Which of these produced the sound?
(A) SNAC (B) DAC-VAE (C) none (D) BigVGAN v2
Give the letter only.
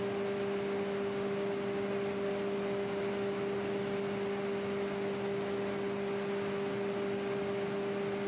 C